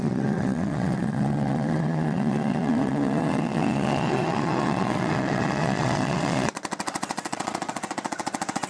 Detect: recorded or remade remade